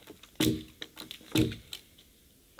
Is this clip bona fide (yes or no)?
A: yes